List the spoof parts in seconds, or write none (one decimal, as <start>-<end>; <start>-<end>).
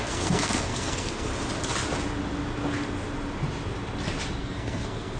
0.0-1.3; 4.4-5.2